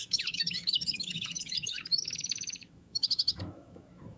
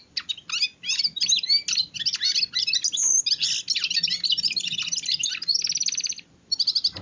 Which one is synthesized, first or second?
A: first